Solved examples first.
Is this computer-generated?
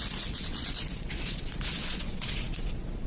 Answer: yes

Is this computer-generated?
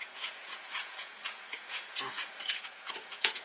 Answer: yes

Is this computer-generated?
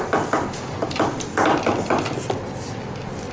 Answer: no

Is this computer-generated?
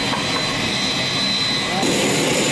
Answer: no